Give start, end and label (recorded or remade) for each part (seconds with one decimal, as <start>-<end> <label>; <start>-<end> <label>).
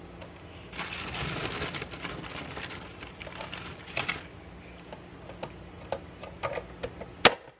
0.0-7.6 recorded